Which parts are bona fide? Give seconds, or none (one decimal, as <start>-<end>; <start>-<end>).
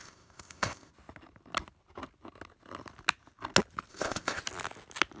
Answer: 0.9-3.9; 4.4-5.2